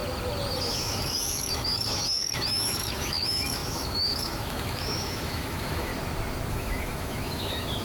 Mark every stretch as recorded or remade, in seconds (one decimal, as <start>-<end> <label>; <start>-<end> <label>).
0.0-0.7 recorded; 0.7-5.9 remade; 5.9-6.5 recorded; 6.5-7.8 remade